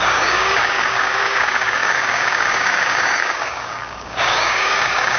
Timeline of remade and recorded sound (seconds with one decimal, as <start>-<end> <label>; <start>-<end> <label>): 0.0-5.2 remade